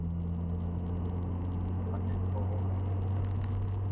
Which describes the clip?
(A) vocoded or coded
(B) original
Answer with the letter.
B